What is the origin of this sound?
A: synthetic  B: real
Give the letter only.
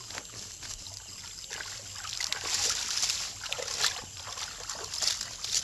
B